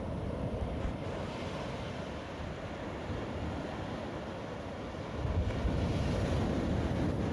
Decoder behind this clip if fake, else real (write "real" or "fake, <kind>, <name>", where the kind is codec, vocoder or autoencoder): real